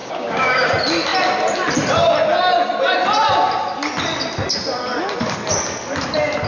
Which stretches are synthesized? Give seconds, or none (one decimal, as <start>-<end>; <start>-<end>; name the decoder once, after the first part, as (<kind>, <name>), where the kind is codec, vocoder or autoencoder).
0.0-0.7 (codec, DAC)